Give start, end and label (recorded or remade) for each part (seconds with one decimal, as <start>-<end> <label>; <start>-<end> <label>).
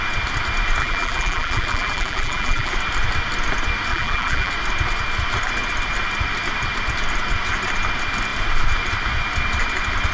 0.0-0.8 recorded; 0.8-2.7 remade; 2.7-3.9 recorded; 3.9-4.5 remade; 4.5-10.1 recorded